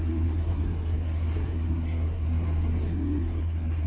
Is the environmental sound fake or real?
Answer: fake